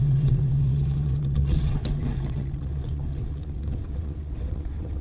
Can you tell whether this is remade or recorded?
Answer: remade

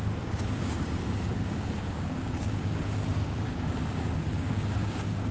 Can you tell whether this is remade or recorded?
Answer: remade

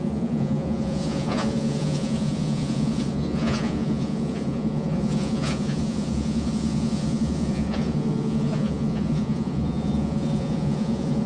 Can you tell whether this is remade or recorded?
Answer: remade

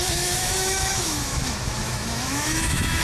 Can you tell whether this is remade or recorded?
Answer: remade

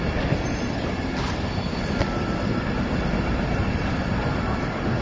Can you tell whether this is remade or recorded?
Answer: recorded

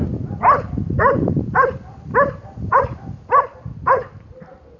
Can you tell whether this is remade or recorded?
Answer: recorded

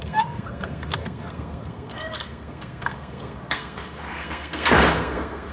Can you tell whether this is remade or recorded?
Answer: remade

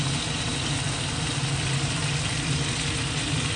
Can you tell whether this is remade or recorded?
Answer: recorded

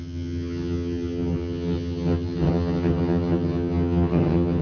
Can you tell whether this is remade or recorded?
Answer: remade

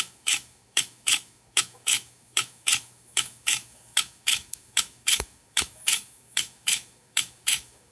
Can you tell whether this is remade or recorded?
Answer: remade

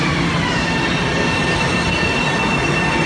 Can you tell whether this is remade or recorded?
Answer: recorded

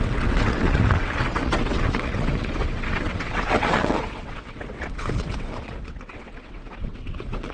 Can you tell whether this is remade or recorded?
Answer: remade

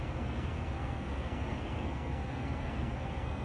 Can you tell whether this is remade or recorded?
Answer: remade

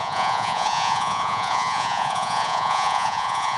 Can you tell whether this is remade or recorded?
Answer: remade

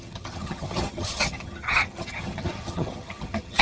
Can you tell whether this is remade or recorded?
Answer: remade